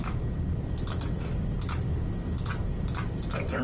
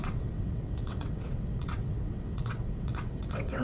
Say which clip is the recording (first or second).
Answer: first